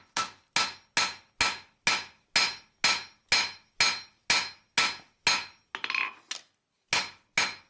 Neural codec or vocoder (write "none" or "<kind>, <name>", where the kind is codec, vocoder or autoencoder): none